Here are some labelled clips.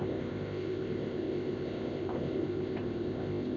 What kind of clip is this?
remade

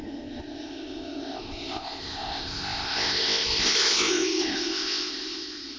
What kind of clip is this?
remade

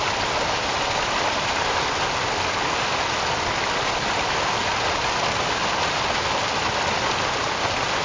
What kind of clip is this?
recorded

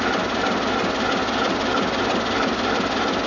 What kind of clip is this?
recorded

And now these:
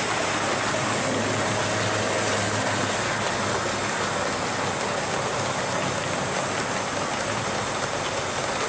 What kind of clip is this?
recorded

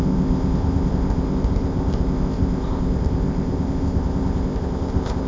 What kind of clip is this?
remade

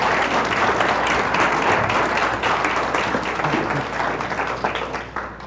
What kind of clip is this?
recorded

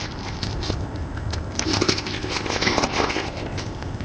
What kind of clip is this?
remade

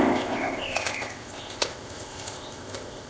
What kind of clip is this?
remade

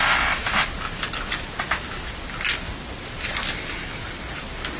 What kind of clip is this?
recorded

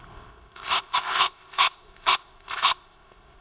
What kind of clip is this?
remade